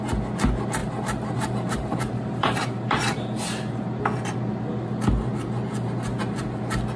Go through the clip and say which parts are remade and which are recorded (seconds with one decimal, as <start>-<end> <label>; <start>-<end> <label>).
0.0-0.8 recorded; 0.8-3.8 remade; 3.8-7.0 recorded